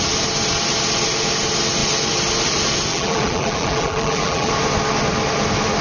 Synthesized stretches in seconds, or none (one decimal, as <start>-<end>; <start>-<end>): 2.9-4.5